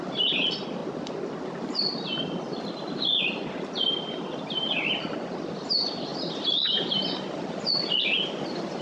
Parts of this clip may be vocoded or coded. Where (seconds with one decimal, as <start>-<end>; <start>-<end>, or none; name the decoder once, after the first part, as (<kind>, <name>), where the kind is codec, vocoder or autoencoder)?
none